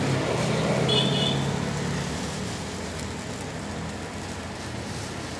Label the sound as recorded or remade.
recorded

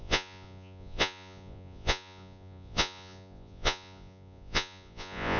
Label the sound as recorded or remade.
remade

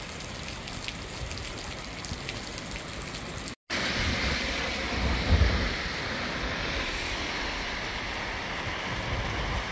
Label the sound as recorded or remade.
recorded